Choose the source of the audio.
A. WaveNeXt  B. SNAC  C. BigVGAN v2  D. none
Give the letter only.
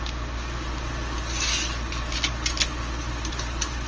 D